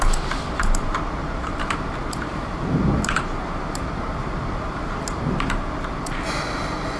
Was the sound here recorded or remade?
remade